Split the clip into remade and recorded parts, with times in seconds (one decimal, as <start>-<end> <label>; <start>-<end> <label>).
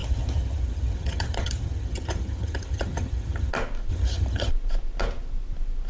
0.0-3.5 remade; 3.5-3.9 recorded; 3.9-4.5 remade; 4.5-5.9 recorded